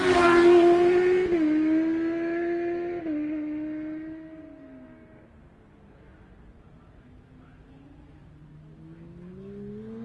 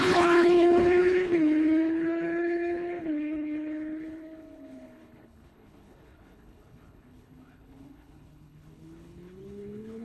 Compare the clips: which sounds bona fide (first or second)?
first